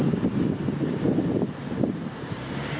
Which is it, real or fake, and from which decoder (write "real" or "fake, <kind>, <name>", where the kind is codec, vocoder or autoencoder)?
real